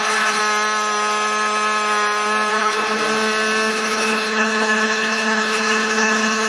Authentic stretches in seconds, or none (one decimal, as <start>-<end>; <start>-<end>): 0.4-2.5; 3.0-3.7